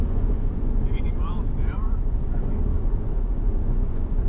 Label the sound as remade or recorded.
remade